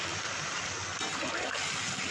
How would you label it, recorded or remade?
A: recorded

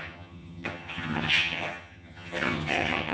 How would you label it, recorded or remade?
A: remade